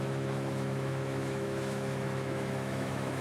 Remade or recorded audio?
remade